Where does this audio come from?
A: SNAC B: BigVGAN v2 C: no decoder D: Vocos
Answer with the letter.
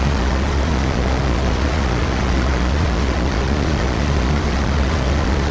D